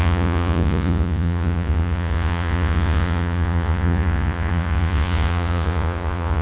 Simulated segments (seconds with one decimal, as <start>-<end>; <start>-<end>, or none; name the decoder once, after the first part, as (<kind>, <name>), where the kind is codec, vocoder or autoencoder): 0.0-6.4 (vocoder, Vocos)